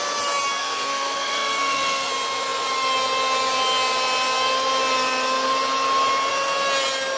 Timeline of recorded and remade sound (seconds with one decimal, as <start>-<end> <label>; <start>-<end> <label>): 0.0-0.6 recorded; 0.6-2.1 remade; 2.1-7.2 recorded